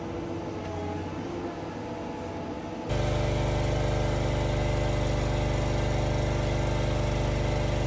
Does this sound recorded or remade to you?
recorded